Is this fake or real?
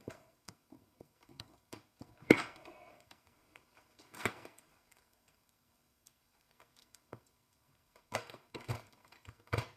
fake